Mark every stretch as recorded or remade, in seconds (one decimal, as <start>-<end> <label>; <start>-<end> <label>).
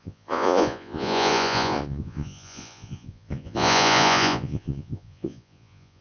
0.0-6.0 remade